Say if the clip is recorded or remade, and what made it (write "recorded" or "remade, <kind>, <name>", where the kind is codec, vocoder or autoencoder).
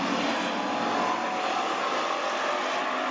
recorded